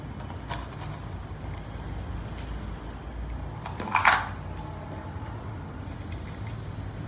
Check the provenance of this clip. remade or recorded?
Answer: recorded